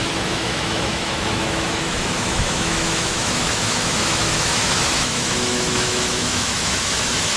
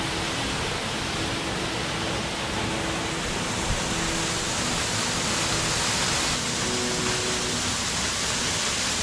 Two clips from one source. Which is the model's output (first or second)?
first